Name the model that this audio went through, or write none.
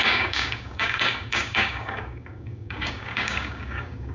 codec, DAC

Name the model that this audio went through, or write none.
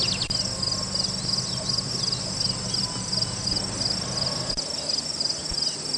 none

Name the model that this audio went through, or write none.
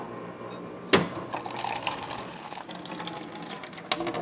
none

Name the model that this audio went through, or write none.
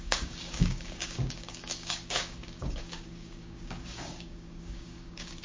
codec, DAC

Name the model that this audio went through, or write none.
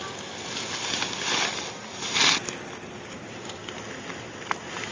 none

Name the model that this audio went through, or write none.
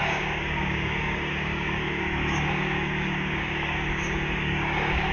codec, DAC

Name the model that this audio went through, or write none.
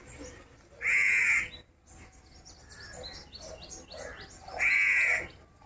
none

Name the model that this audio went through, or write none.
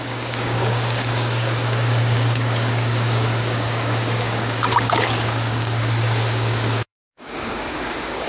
codec, DAC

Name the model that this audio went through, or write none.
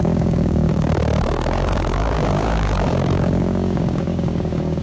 codec, DAC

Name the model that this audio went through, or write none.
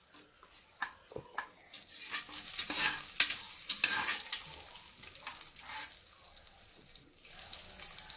none